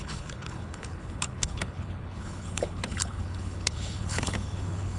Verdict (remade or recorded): remade